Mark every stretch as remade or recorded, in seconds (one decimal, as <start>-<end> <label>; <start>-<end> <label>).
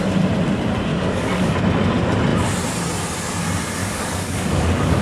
0.0-0.9 recorded; 0.9-1.6 remade; 1.6-3.8 recorded; 3.8-5.0 remade